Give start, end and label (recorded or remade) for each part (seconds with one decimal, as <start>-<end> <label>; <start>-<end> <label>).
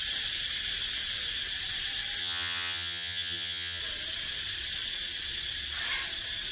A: 0.0-2.2 recorded; 2.2-3.8 remade; 3.8-6.5 recorded